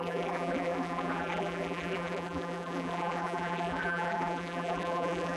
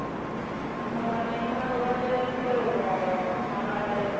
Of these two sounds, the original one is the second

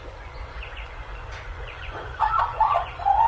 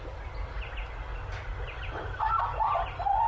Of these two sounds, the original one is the second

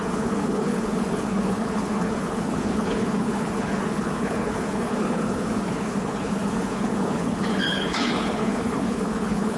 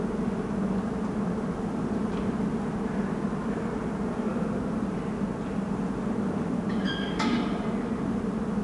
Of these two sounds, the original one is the second